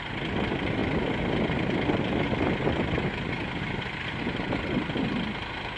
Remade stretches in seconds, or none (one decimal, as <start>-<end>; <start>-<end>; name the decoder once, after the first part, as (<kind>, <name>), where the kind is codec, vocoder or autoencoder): none